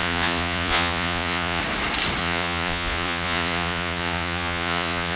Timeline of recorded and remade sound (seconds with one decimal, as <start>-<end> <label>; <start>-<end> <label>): 0.0-1.6 remade; 1.6-2.2 recorded; 2.2-5.2 remade